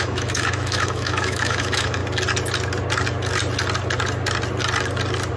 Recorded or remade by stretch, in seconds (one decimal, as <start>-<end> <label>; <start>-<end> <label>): 0.0-2.0 remade; 2.0-5.4 recorded